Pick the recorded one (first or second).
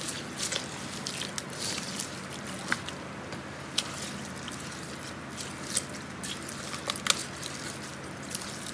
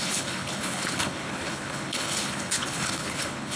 first